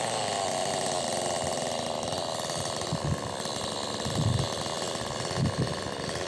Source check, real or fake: real